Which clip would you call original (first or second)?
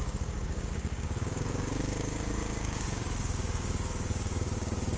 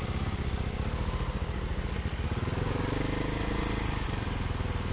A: second